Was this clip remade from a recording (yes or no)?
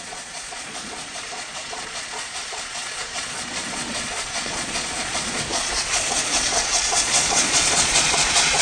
yes